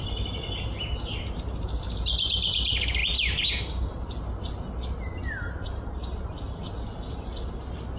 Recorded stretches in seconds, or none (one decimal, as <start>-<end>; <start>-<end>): 0.0-8.0